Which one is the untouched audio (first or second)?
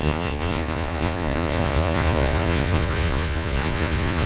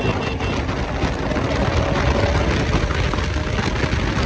second